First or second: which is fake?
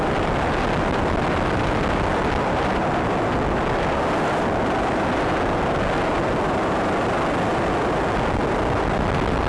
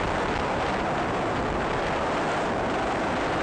second